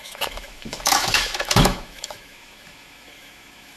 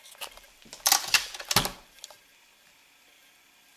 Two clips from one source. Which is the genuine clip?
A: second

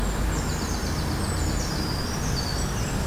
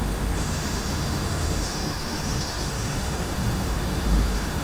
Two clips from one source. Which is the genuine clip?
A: first